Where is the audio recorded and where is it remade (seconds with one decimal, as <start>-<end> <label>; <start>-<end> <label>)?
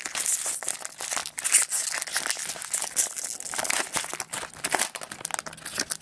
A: 0.0-6.0 recorded